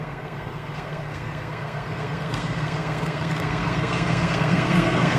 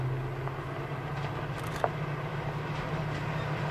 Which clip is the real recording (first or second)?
second